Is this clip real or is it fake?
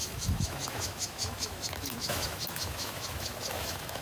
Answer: fake